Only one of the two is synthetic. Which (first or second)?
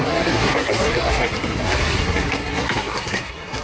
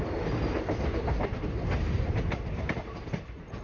first